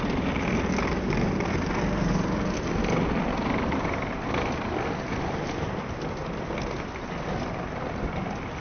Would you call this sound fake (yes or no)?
no